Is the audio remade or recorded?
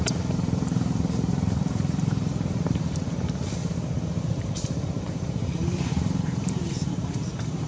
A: remade